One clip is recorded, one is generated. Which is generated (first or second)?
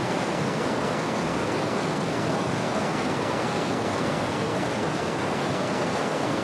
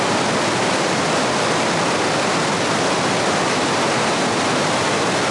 first